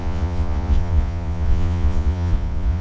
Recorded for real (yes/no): no